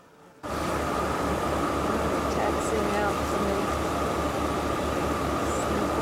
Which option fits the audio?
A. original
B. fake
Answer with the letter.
A